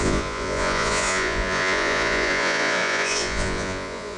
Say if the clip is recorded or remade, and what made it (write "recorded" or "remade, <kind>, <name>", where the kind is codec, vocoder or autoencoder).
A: remade, vocoder, Vocos